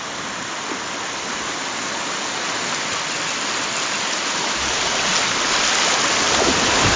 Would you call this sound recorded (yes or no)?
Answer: yes